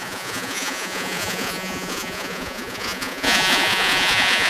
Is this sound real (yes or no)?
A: no